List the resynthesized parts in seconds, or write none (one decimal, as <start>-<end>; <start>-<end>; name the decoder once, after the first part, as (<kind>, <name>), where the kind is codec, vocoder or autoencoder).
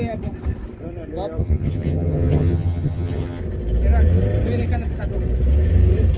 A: 1.4-3.4 (vocoder, HiFi-GAN)